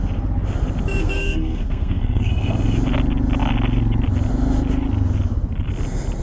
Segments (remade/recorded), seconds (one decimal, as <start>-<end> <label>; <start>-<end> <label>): 0.0-1.0 recorded; 1.0-2.3 remade; 2.3-6.2 recorded